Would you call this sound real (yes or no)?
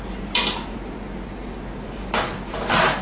yes